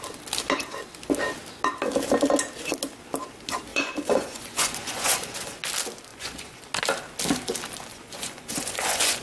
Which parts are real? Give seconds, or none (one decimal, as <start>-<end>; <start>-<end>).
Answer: 0.0-3.7; 5.6-6.1; 6.6-7.9